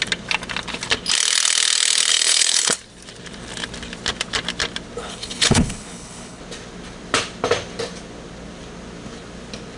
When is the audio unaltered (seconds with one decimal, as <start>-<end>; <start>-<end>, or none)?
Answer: 0.0-2.1; 2.8-5.0; 6.4-9.8